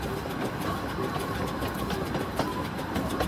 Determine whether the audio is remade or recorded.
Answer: recorded